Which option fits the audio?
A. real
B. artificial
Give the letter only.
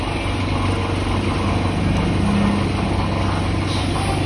A